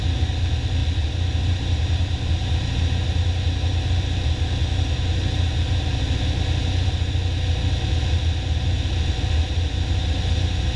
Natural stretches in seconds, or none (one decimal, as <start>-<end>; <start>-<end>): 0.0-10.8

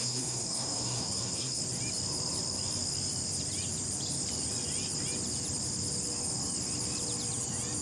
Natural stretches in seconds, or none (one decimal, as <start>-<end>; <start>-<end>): 1.6-7.8

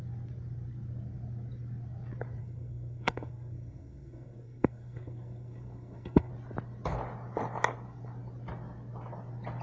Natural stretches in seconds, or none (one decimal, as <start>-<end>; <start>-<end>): 0.0-2.4; 6.3-9.6

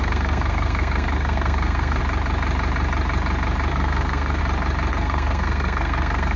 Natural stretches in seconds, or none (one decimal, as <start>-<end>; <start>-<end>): 2.0-3.7; 4.4-4.9

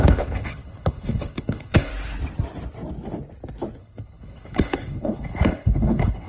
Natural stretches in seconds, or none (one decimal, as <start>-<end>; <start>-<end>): 1.9-3.8

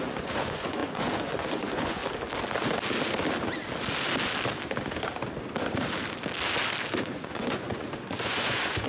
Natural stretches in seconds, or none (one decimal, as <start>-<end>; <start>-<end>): 2.0-7.0